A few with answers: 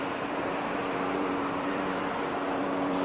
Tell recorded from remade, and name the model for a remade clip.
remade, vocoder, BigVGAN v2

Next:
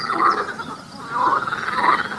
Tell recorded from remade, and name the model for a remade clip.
recorded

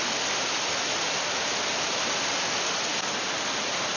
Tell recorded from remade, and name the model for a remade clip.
recorded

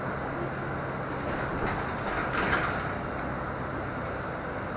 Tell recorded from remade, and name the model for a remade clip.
recorded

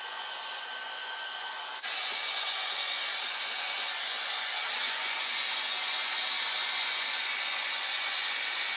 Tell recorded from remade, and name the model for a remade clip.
remade, vocoder, Vocos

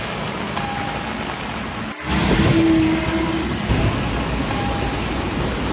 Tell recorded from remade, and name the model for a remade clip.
recorded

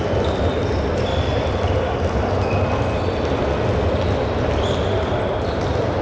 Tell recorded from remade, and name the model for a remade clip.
recorded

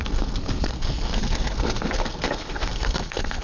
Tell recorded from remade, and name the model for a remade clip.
remade, codec, SNAC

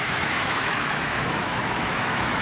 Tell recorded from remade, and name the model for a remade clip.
remade, autoencoder, DAC-VAE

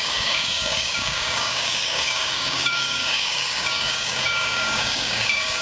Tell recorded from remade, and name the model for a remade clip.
remade, codec, DAC